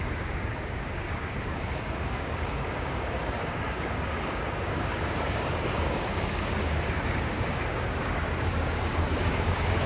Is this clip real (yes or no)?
no